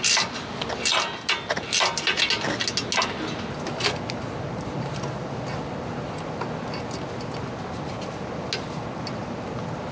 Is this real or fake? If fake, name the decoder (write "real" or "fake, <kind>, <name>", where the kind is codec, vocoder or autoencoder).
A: real